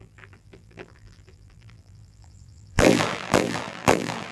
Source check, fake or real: fake